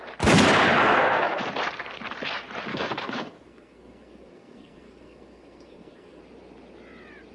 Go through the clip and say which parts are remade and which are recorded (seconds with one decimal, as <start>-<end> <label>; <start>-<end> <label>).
0.0-0.8 recorded; 0.8-1.4 remade; 1.4-2.7 recorded; 2.7-6.2 remade; 6.2-7.3 recorded